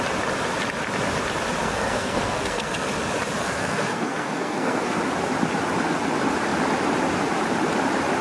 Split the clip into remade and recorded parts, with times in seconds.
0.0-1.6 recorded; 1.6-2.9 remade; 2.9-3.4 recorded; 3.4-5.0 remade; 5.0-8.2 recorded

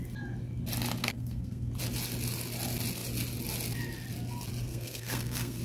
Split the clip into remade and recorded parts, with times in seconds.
0.0-1.0 recorded; 1.0-1.7 remade; 1.7-4.7 recorded; 4.7-5.6 remade

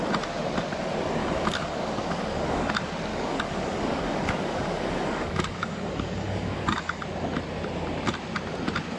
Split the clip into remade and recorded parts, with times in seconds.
0.0-1.2 recorded; 1.2-2.7 remade; 2.7-3.1 recorded; 3.1-7.0 remade; 7.0-9.0 recorded

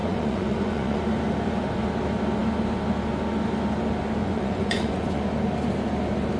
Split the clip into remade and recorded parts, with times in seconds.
0.0-1.0 remade; 1.0-4.2 recorded; 4.2-5.2 remade; 5.2-6.4 recorded

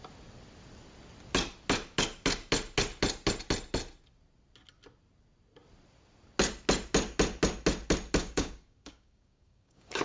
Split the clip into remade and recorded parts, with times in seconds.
0.0-8.2 recorded; 8.2-10.0 remade

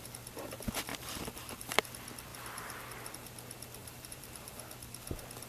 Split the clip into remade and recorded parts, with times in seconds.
0.0-0.9 recorded; 0.9-1.9 remade; 1.9-2.3 recorded; 2.3-2.8 remade; 2.8-3.8 recorded; 3.8-4.6 remade; 4.6-5.5 recorded

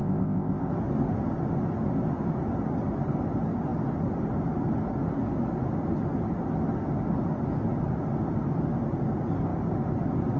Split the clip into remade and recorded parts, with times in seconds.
0.0-0.7 remade; 0.7-10.4 recorded